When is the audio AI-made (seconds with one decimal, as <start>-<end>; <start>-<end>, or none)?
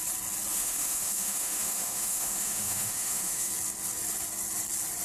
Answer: 0.5-3.5